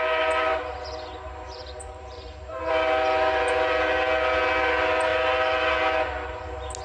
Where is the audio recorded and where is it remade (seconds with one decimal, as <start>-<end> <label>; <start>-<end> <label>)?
0.0-0.5 recorded; 0.5-2.7 remade; 2.7-6.8 recorded